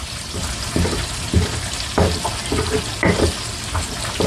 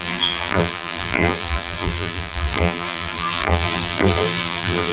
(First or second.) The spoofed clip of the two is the second